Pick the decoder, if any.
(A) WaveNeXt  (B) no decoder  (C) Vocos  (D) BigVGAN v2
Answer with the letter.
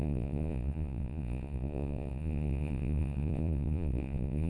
C